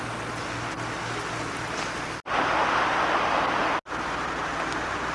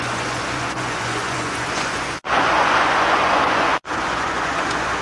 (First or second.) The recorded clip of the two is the first